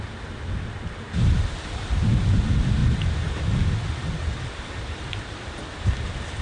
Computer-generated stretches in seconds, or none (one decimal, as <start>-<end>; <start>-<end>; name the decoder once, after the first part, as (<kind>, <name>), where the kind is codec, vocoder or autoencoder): none